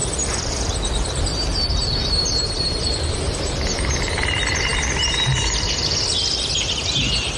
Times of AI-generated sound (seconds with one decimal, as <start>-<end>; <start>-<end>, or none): 2.0-4.1